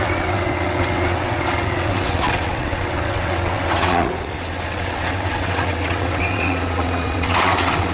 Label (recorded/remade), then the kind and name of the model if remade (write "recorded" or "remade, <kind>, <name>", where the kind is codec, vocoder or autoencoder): remade, vocoder, WaveNeXt